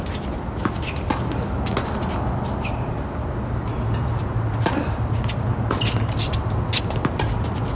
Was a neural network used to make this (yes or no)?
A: no